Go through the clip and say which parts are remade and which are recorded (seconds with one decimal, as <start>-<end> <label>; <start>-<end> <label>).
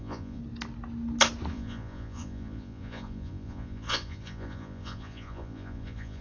0.0-0.4 remade; 0.4-1.5 recorded; 1.5-6.2 remade